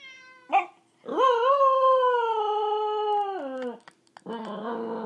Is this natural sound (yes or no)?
yes